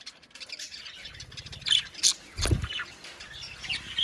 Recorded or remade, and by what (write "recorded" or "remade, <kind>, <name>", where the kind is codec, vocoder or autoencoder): recorded